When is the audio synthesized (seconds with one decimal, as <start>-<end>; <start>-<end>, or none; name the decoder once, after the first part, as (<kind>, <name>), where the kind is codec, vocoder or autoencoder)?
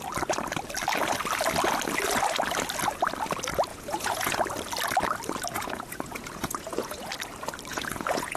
3.7-4.4 (vocoder, Vocos); 5.5-7.1; 7.7-8.4